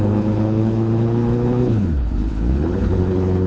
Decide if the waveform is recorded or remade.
remade